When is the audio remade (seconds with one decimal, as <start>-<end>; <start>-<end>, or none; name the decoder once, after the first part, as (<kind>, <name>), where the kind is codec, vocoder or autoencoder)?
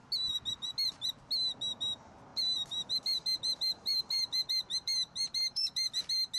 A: 2.3-5.9 (vocoder, BigVGAN v2)